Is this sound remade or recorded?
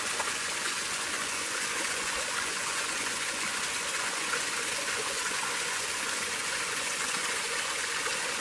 remade